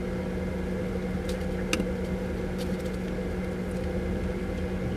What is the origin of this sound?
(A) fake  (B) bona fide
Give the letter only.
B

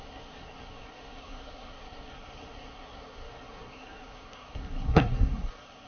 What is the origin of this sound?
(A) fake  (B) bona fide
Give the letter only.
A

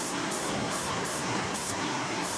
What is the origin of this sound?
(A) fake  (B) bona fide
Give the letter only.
A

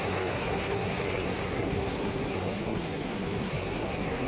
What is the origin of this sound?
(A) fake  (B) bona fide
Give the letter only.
A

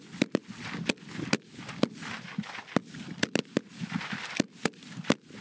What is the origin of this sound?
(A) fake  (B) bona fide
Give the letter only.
B